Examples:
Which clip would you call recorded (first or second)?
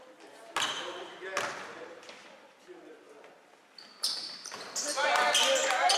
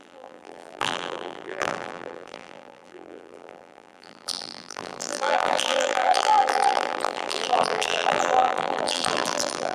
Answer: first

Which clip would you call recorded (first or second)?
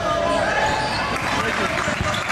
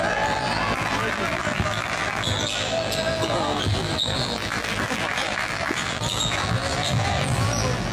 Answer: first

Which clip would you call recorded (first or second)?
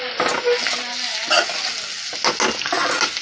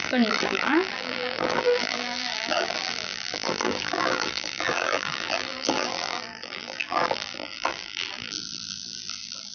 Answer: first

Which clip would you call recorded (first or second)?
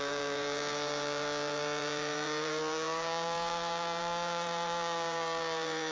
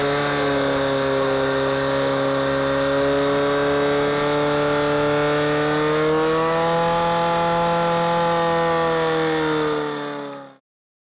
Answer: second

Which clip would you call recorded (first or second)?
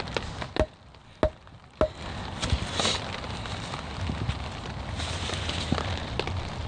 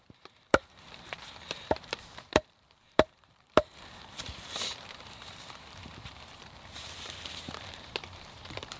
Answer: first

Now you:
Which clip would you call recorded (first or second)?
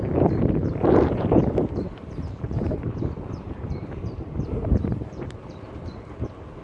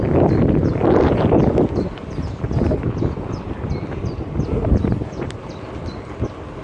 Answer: second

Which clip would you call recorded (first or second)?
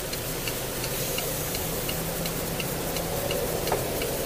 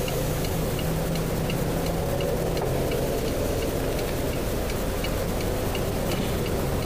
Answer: second